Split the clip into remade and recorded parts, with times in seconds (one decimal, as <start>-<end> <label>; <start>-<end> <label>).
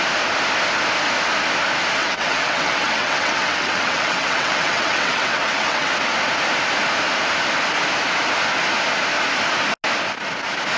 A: 0.0-2.0 recorded; 2.0-5.9 remade; 5.9-10.8 recorded